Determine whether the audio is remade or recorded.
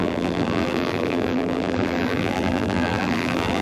remade